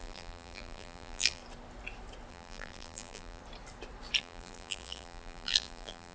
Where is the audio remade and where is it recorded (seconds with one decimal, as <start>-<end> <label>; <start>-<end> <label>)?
0.0-1.4 remade; 1.4-2.3 recorded; 2.3-3.4 remade; 3.4-4.2 recorded; 4.2-6.1 remade